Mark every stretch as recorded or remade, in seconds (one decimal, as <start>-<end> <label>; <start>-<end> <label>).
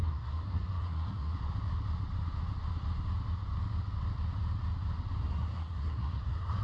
0.0-1.3 remade; 1.3-5.2 recorded; 5.2-6.6 remade